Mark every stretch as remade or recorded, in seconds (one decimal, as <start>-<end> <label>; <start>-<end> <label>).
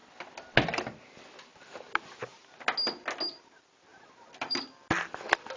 0.0-3.9 recorded; 3.9-4.6 remade; 4.6-5.6 recorded